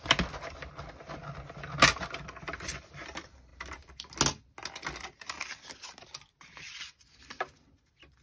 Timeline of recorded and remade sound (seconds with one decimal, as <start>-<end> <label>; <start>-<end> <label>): 0.0-8.2 recorded